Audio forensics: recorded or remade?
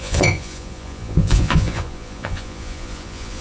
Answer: remade